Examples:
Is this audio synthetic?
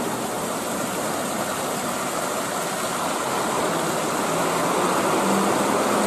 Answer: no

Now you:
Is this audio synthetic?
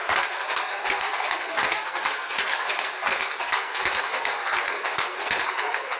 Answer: yes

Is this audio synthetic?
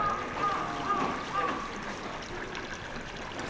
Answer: no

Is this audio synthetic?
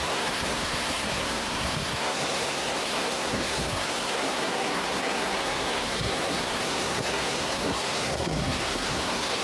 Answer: yes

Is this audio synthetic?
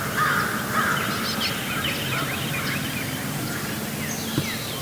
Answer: no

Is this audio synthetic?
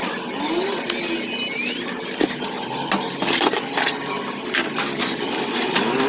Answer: no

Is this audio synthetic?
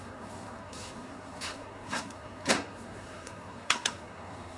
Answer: yes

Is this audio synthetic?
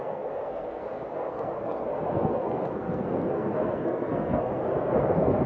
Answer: yes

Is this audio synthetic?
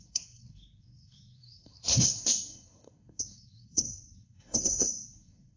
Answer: yes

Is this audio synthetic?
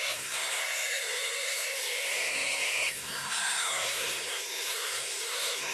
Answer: yes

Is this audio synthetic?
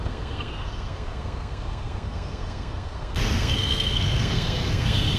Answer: yes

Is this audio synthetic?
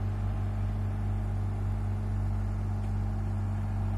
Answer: no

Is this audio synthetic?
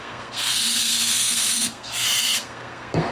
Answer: yes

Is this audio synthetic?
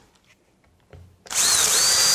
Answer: no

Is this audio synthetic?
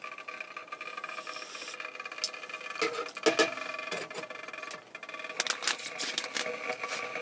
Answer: no